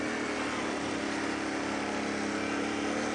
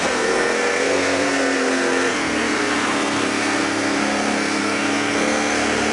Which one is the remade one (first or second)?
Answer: second